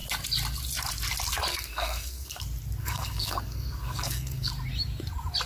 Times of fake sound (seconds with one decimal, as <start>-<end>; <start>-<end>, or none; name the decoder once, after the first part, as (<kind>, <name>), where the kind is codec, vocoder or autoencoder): 1.5-2.4 (codec, SNAC); 2.8-4.5